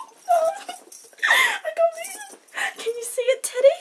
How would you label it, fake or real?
real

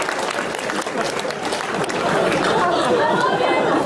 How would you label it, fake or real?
real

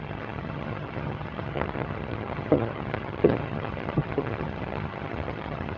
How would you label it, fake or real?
fake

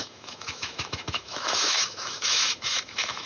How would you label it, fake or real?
fake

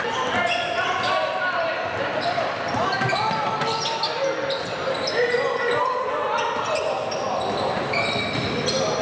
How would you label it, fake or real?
real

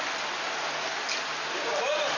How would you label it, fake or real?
real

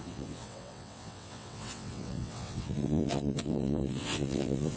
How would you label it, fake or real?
fake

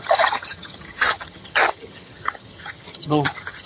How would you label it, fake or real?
fake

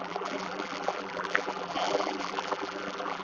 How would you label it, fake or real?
fake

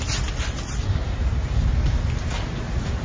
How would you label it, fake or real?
real